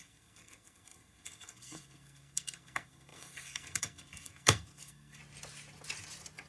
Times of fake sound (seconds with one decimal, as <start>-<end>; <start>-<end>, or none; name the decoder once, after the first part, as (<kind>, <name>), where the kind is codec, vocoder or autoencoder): 0.0-5.2 (codec, SNAC)